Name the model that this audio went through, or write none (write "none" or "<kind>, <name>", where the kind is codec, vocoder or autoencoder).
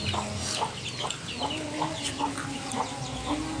none